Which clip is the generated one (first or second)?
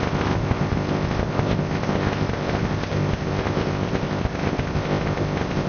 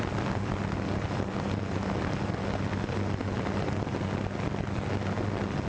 first